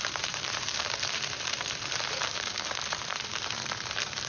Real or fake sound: fake